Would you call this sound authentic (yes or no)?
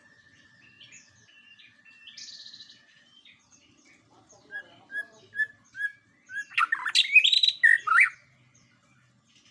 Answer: yes